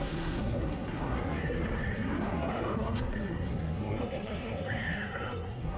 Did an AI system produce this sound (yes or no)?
yes